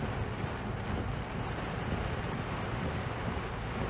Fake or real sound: fake